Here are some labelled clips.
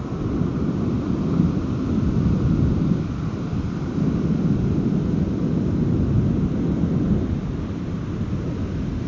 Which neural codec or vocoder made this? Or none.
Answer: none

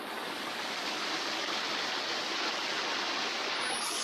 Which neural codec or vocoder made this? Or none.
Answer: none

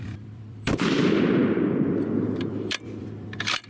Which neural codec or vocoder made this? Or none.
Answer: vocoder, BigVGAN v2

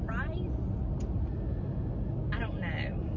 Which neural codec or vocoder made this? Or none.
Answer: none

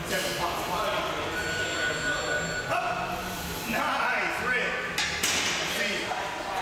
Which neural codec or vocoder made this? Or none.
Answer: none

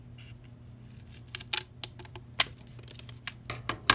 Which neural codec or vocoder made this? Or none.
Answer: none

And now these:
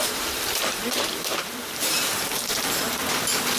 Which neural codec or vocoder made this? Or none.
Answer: vocoder, BigVGAN v2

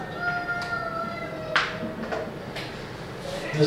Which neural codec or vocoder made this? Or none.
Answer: none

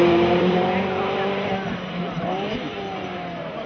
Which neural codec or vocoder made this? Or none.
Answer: vocoder, BigVGAN v2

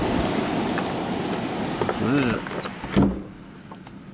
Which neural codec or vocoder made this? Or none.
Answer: none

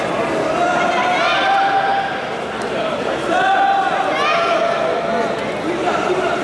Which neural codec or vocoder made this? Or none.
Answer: vocoder, BigVGAN v2